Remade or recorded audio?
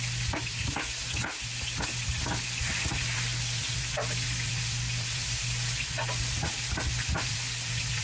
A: recorded